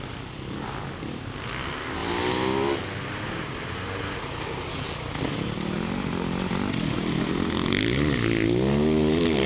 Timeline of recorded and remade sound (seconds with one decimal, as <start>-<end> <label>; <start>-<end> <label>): 0.0-9.5 recorded